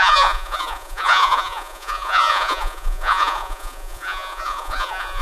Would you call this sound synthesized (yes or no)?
yes